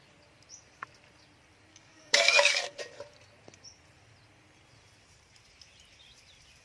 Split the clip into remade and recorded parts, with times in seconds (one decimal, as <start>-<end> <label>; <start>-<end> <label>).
0.0-1.7 recorded; 1.7-2.8 remade; 2.8-6.6 recorded